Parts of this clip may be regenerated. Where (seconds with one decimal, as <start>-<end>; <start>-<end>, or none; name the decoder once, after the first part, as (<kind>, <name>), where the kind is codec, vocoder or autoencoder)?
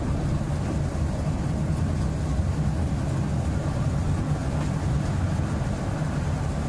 none